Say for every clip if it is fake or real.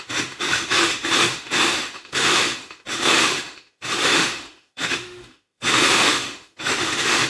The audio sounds fake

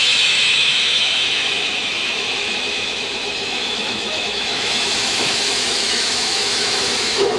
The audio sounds fake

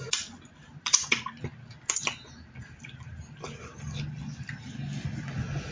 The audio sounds real